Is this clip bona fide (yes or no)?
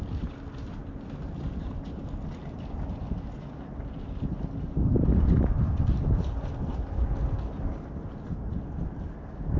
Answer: yes